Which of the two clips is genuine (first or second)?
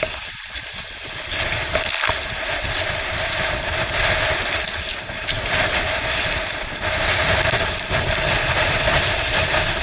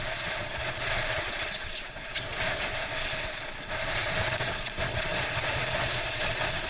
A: first